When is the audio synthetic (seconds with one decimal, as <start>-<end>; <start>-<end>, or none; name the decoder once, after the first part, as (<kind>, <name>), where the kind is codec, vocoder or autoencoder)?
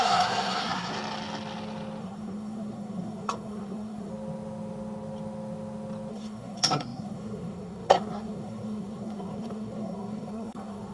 0.0-0.9 (codec, SNAC); 2.0-4.1; 6.1-10.9